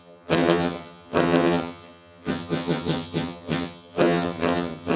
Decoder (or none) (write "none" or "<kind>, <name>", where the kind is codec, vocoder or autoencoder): vocoder, HiFi-GAN